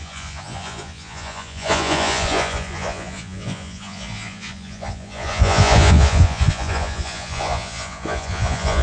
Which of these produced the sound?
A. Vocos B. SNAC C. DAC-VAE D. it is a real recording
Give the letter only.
A